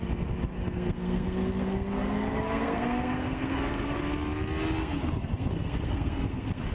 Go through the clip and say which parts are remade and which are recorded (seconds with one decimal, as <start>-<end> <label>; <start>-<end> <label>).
0.0-0.5 recorded; 0.5-4.0 remade; 4.0-4.8 recorded; 4.8-6.7 remade